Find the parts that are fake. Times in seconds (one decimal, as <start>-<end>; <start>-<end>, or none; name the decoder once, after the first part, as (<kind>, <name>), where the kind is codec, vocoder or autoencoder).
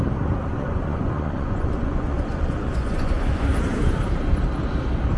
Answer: 0.4-3.5 (vocoder, Vocos)